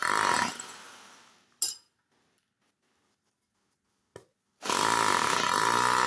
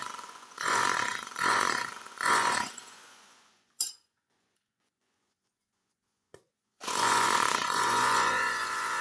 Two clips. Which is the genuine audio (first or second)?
first